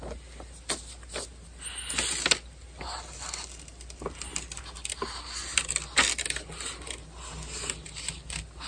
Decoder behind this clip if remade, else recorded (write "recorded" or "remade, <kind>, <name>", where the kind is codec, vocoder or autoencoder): recorded